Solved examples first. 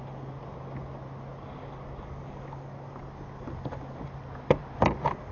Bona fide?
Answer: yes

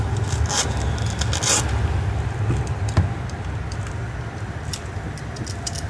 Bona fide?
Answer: yes